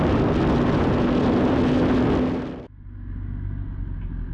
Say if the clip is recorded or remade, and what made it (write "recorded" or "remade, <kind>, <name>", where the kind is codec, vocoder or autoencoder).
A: recorded